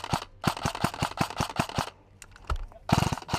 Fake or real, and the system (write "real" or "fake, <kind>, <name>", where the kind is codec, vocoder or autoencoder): real